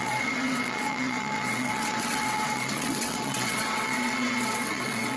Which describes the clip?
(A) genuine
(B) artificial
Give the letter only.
B